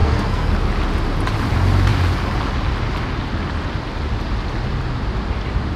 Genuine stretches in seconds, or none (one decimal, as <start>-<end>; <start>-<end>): 0.5-5.8